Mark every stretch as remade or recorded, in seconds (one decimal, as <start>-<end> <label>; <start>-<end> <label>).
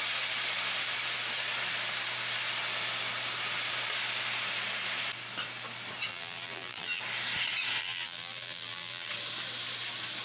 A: 0.0-6.1 recorded; 6.1-7.0 remade; 7.0-7.8 recorded; 7.8-9.1 remade; 9.1-10.2 recorded